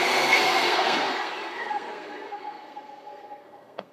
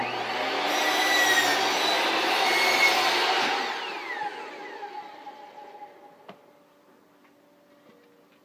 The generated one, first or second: first